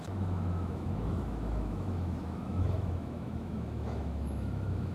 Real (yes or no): no